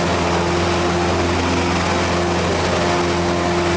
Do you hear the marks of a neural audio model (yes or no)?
no